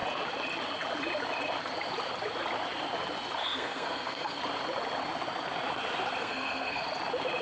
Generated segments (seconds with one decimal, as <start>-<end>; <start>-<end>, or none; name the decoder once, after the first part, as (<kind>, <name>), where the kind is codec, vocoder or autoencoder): 3.4-4.4 (codec, SNAC); 6.2-6.8